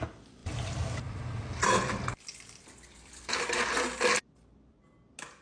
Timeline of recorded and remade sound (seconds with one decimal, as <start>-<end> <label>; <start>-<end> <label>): 0.0-0.4 recorded; 0.4-3.3 remade; 3.3-5.4 recorded

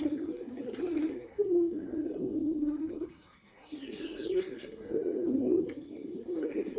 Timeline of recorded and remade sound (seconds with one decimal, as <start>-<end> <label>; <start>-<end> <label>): 0.0-6.8 remade

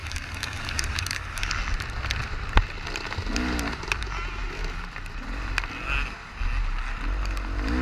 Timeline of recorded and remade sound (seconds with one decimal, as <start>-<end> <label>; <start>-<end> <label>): 0.0-1.5 remade; 1.5-7.8 recorded

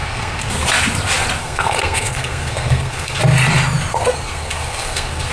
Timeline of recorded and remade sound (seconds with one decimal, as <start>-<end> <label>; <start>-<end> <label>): 0.0-0.5 remade; 0.5-1.4 recorded; 1.4-3.2 remade; 3.2-3.9 recorded; 3.9-5.3 remade

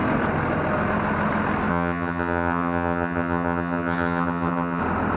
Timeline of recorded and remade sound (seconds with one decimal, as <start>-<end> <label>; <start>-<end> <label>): 0.0-1.7 recorded; 1.7-4.8 remade; 4.8-5.2 recorded

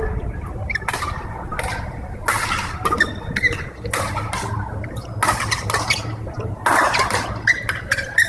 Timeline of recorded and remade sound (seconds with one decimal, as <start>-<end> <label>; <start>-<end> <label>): 0.0-8.3 recorded

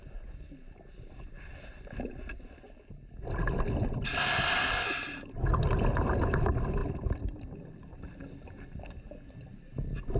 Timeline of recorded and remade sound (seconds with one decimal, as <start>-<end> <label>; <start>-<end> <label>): 0.0-10.2 recorded